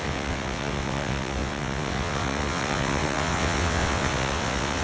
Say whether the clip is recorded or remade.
remade